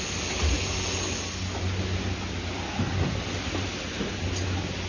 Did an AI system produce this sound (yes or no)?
no